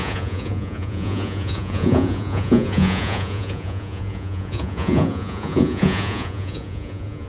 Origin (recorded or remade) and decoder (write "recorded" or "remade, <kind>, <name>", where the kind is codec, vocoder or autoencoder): remade, vocoder, Vocos